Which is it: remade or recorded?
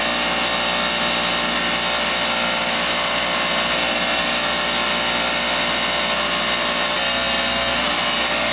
recorded